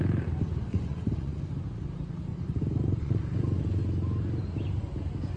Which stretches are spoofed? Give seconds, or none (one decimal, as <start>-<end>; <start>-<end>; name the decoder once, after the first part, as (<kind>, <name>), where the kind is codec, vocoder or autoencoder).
0.7-1.4 (vocoder, Vocos); 2.3-3.8